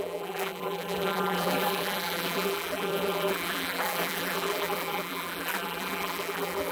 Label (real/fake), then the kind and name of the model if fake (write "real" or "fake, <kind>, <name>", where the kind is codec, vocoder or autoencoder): fake, vocoder, BigVGAN v2